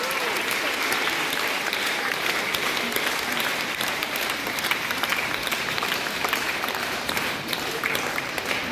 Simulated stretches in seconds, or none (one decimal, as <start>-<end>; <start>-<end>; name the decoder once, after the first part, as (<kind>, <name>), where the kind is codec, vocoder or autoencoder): 0.0-8.7 (vocoder, BigVGAN v2)